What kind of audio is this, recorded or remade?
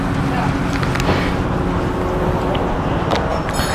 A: recorded